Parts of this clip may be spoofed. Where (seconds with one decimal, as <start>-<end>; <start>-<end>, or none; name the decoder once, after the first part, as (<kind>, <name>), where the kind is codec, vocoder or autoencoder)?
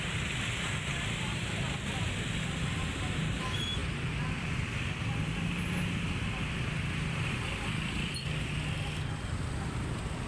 none